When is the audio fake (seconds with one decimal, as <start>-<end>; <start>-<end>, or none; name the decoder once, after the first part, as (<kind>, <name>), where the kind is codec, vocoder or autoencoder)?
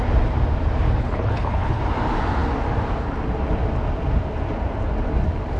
1.0-1.8 (codec, HILCodec)